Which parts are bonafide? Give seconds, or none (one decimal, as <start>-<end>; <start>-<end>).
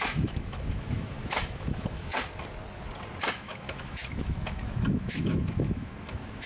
2.1-3.3